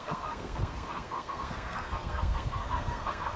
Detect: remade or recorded remade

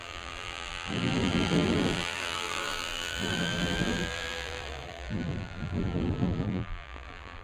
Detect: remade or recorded remade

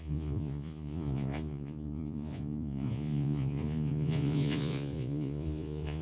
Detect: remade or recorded remade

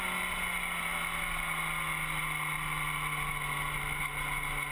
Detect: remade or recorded recorded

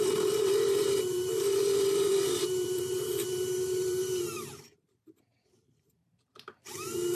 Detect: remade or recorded remade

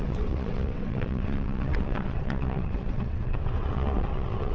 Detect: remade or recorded remade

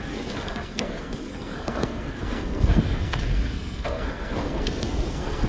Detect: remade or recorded remade